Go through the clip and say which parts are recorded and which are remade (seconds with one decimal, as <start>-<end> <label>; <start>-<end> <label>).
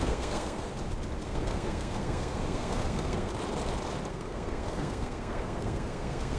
0.0-0.7 remade; 0.7-1.2 recorded; 1.2-3.3 remade; 3.3-4.1 recorded; 4.1-6.4 remade